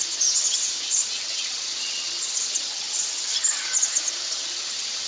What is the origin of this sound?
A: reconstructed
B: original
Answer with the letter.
A